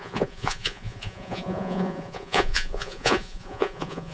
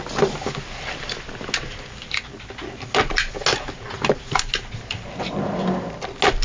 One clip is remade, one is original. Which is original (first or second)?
second